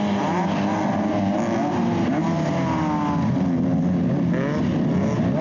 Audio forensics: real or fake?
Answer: real